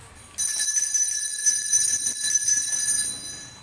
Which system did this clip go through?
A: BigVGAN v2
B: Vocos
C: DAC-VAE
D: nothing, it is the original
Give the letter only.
D